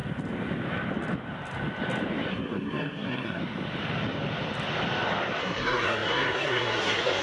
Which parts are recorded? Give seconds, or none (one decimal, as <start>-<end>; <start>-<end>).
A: 0.0-2.3; 3.4-5.4